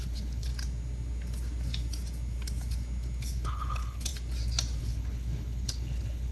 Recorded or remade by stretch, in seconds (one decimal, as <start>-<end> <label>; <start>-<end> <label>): 0.0-0.5 remade; 0.5-3.2 recorded; 3.2-4.1 remade; 4.1-4.8 recorded; 4.8-6.3 remade